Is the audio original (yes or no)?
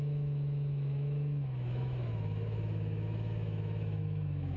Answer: no